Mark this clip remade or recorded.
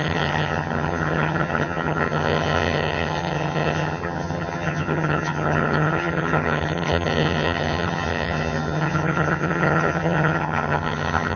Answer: remade